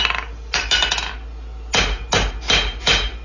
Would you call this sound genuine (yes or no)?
yes